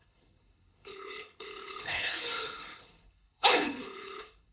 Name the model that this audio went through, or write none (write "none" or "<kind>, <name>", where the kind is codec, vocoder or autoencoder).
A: codec, HILCodec